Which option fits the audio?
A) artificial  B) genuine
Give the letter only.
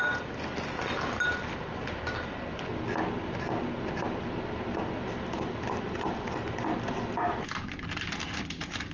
B